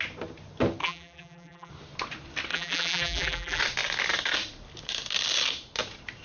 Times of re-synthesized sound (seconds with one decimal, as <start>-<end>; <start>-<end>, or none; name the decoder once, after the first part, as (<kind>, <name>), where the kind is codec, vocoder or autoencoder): 0.8-1.7 (vocoder, BigVGAN v2); 2.5-3.6